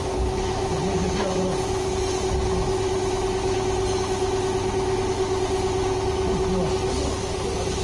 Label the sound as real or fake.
real